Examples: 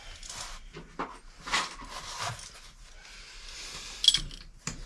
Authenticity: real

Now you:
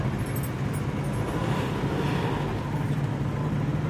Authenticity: real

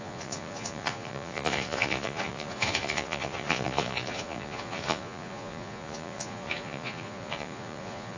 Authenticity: fake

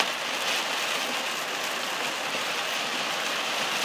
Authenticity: real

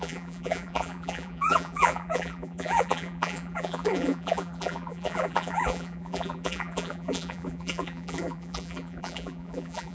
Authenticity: fake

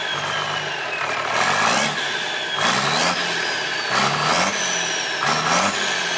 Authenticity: real